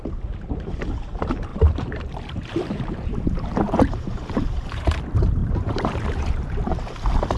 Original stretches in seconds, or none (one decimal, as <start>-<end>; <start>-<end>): 0.0-1.5; 5.0-5.4; 6.6-7.4